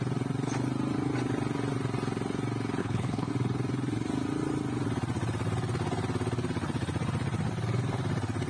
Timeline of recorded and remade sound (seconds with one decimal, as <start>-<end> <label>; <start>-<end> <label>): 0.0-2.8 recorded; 2.8-3.3 remade; 3.3-8.5 recorded